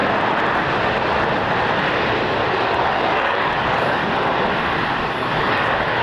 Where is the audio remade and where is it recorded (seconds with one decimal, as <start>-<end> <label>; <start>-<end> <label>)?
0.0-2.5 recorded; 2.5-4.0 remade; 4.0-5.1 recorded; 5.1-6.0 remade